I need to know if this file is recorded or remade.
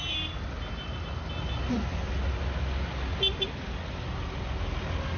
recorded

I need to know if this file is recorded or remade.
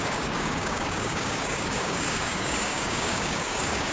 remade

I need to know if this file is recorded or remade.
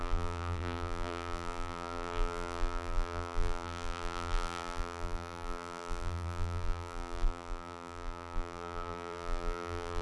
remade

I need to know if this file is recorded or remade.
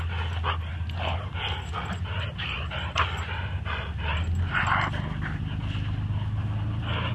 recorded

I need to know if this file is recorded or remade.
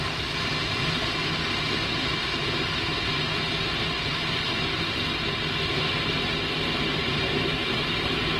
recorded